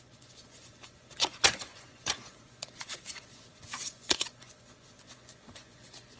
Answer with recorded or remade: remade